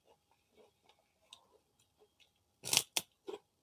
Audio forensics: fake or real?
real